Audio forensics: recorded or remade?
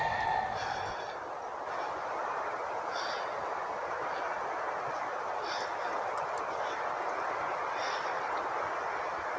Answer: recorded